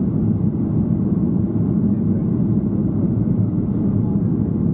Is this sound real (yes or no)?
yes